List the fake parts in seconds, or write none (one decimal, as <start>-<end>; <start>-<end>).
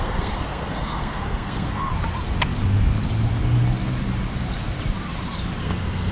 0.0-1.9; 5.6-6.1